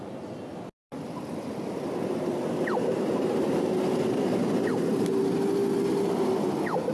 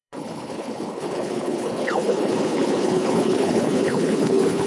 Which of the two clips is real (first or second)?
first